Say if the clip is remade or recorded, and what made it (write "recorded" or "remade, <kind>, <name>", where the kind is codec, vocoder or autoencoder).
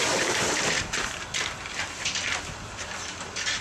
remade, vocoder, BigVGAN v2